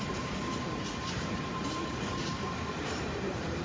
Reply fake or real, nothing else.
fake